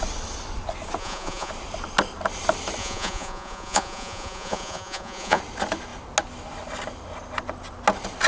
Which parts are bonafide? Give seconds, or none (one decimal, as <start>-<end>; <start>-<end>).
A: 0.0-1.0; 1.5-2.8; 5.4-8.3